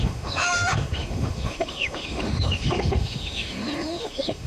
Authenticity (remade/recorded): remade